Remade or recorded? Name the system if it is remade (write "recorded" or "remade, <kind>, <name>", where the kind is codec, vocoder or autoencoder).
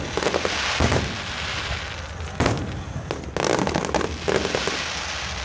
recorded